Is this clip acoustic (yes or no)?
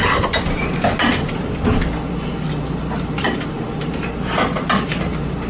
yes